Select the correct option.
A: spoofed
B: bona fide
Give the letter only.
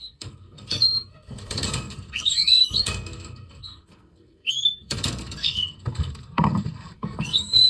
A